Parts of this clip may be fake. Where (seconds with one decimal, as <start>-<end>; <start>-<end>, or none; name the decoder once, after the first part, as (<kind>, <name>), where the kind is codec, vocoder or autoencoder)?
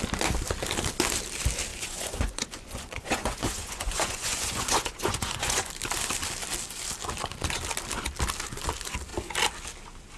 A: 1.7-5.7 (vocoder, Vocos)